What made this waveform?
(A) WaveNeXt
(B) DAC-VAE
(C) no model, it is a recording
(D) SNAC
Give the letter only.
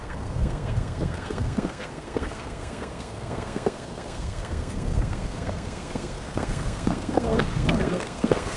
D